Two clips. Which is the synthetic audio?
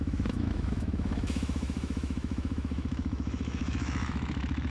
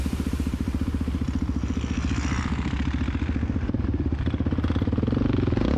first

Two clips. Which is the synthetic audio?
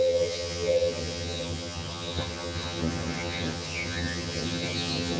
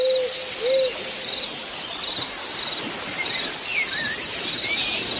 first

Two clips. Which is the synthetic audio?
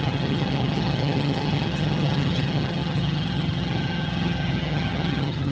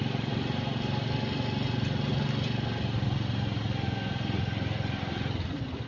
first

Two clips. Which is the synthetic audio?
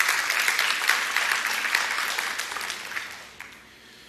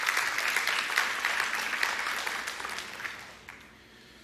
first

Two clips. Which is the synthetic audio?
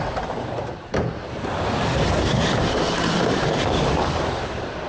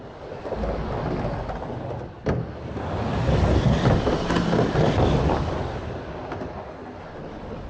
first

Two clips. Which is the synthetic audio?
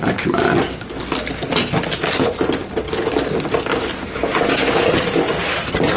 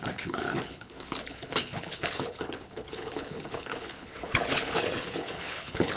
second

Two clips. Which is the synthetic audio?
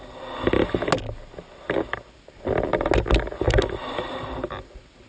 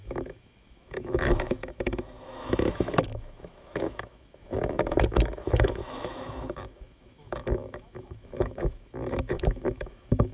second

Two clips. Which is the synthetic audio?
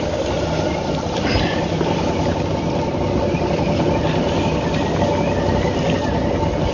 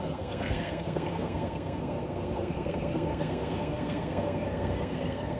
second